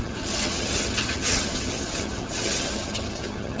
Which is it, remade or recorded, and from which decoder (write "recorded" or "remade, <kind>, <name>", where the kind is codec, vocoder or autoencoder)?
remade, vocoder, HiFi-GAN